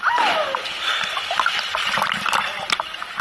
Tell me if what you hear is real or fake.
real